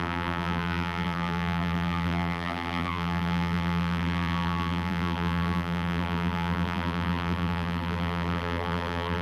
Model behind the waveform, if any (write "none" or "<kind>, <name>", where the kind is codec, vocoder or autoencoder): vocoder, BigVGAN v2